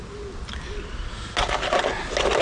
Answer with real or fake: real